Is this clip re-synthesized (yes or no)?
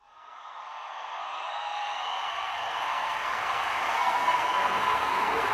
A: yes